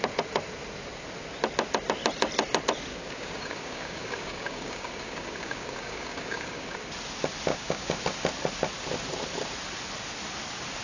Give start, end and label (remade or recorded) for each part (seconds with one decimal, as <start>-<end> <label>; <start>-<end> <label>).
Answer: 0.0-2.9 recorded; 2.9-6.8 remade; 6.8-7.5 recorded; 7.5-8.0 remade; 8.0-10.8 recorded